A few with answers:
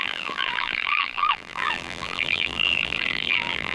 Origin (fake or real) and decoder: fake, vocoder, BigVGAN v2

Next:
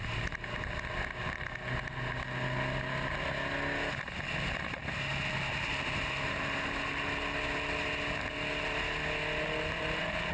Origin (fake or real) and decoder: real